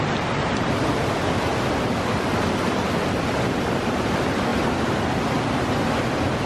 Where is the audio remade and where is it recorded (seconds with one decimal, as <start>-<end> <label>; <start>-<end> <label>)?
0.0-6.5 recorded